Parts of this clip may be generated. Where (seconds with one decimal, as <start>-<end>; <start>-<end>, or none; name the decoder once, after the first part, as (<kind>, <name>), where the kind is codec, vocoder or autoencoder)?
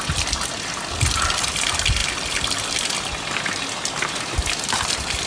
none